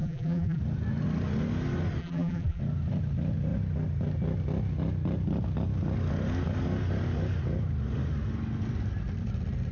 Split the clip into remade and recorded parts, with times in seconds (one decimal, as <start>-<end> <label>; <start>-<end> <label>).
0.0-0.6 remade; 0.6-2.0 recorded; 2.0-2.6 remade; 2.6-9.7 recorded